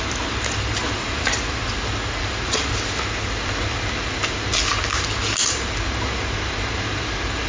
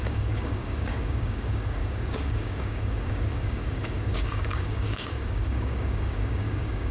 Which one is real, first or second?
first